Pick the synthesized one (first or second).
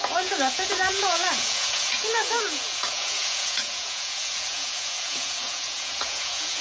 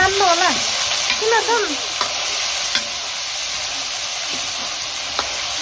first